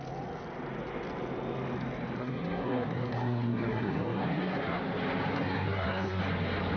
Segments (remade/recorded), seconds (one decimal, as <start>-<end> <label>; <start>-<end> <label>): 0.0-2.2 recorded; 2.2-4.8 remade; 4.8-5.3 recorded; 5.3-6.2 remade; 6.2-6.8 recorded